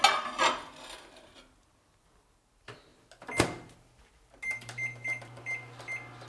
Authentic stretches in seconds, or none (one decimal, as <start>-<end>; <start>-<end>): 0.0-6.3